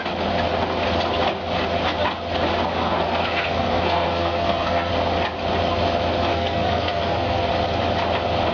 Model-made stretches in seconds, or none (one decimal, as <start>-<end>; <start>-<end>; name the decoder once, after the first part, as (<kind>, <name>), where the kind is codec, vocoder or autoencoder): 2.7-4.9 (codec, SNAC); 6.3-7.5